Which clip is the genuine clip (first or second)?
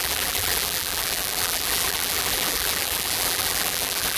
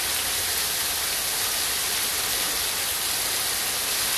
second